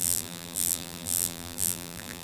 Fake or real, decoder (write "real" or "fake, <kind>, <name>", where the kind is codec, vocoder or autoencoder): fake, vocoder, BigVGAN v2